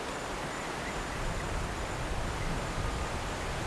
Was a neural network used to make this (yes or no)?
no